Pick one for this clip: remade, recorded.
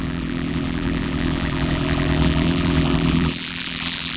remade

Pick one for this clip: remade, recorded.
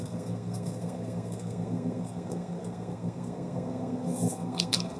remade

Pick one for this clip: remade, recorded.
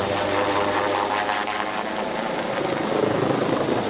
recorded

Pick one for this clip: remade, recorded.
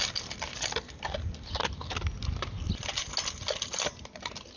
recorded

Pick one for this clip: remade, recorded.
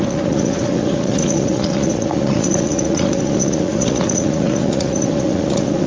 remade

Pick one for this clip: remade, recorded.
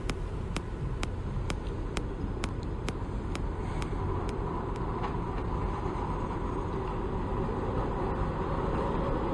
recorded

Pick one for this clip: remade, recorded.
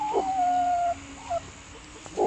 recorded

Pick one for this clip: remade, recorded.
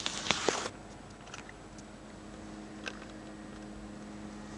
recorded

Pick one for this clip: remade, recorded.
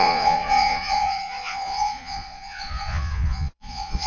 remade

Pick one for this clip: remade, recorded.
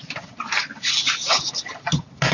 recorded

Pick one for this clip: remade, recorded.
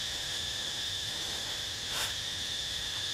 remade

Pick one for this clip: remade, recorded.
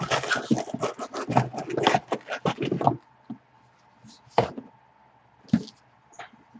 recorded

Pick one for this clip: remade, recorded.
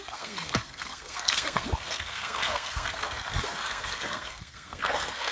remade